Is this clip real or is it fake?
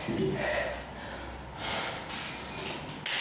real